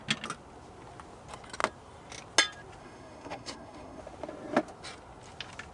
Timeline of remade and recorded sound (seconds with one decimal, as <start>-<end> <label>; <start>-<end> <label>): 0.0-2.8 recorded; 2.8-4.0 remade; 4.0-5.7 recorded